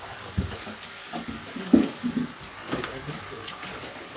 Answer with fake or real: fake